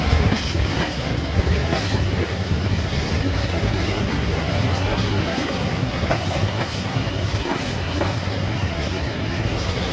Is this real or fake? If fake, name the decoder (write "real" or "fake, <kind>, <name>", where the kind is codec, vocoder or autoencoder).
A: fake, codec, SNAC